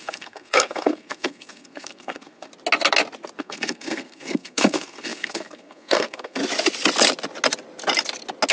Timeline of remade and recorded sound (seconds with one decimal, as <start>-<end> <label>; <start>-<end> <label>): 0.0-2.5 remade; 2.5-3.4 recorded; 3.4-6.4 remade; 6.4-8.5 recorded